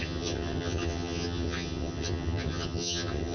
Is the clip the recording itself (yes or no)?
no